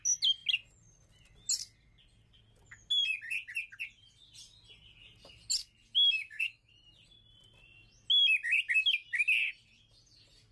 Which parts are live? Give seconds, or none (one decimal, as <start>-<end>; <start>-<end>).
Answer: 0.0-6.2; 6.7-10.5